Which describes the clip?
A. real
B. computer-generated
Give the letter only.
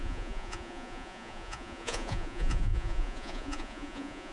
B